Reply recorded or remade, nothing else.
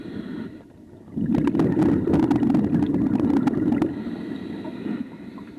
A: recorded